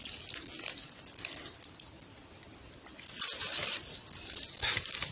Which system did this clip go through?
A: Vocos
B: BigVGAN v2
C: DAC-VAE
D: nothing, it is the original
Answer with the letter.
D